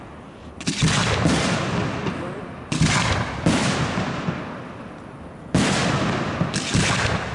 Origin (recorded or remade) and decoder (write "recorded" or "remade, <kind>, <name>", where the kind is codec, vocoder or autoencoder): recorded